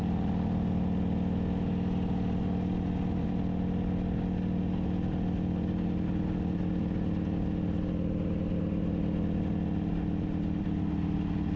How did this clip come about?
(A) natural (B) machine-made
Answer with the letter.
A